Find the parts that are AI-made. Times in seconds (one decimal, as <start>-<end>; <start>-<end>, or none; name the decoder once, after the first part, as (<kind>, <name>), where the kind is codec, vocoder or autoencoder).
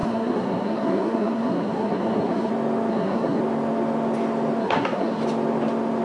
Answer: 0.0-2.5 (codec, SNAC); 2.9-3.4; 4.6-5.2